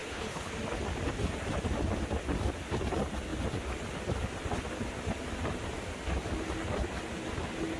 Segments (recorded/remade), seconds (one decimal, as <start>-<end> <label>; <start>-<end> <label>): 0.0-0.5 remade; 0.5-7.8 recorded